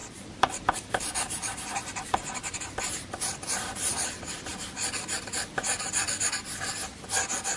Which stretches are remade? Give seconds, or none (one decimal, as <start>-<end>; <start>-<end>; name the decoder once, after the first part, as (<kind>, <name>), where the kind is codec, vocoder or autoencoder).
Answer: 0.0-4.5 (vocoder, BigVGAN v2)